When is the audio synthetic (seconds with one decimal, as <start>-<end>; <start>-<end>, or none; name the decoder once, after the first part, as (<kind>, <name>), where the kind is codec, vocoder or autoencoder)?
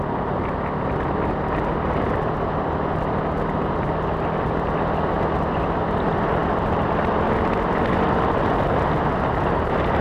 none